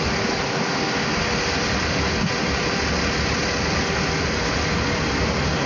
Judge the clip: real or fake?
real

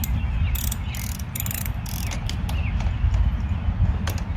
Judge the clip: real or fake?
real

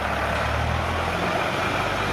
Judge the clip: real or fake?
real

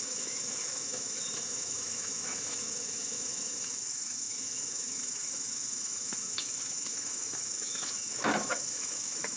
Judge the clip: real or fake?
fake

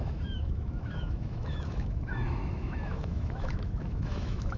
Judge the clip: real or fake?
fake